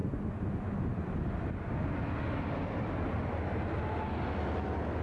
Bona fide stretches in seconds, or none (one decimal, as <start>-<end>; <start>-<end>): 0.0-5.0